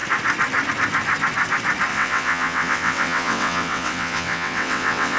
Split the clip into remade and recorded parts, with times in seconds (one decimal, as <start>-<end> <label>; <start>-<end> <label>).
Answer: 0.0-1.9 recorded; 1.9-5.2 remade